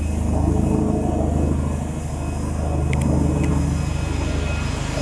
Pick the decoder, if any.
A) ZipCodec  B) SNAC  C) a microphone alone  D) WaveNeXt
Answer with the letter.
C